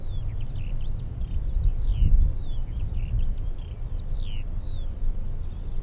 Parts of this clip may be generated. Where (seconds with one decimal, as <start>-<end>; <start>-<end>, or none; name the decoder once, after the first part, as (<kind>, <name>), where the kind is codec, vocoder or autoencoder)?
none